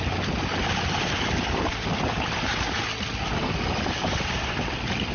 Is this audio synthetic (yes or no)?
no